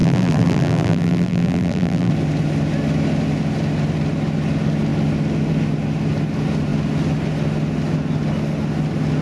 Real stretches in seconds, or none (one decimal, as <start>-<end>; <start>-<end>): 2.1-9.2